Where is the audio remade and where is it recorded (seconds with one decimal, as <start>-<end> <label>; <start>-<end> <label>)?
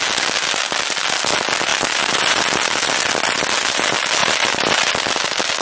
0.0-1.7 recorded; 1.7-2.4 remade; 2.4-4.2 recorded; 4.2-4.9 remade; 4.9-5.6 recorded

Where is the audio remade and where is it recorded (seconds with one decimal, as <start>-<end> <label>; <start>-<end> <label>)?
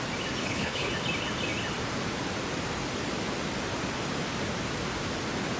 0.0-0.4 recorded; 0.4-0.9 remade; 0.9-5.6 recorded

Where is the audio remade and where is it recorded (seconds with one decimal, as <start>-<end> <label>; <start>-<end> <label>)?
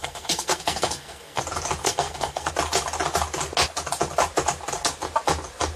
0.0-1.4 remade; 1.4-1.8 recorded; 1.8-2.5 remade; 2.5-5.8 recorded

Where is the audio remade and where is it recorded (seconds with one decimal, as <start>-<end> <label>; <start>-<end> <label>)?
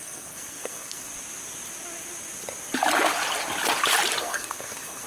0.0-1.1 remade; 1.1-4.2 recorded; 4.2-5.1 remade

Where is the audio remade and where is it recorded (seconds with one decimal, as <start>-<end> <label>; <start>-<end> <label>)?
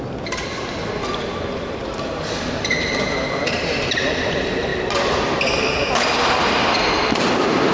0.0-7.7 recorded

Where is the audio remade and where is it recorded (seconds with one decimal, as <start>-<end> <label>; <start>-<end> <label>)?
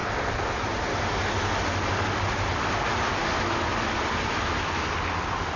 0.0-5.6 recorded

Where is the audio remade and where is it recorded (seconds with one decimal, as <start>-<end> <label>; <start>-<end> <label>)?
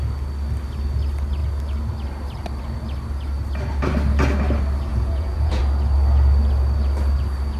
0.0-4.9 recorded; 4.9-5.6 remade; 5.6-7.6 recorded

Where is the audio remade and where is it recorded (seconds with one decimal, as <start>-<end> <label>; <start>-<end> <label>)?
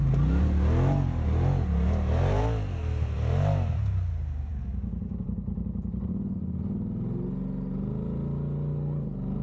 0.0-9.4 recorded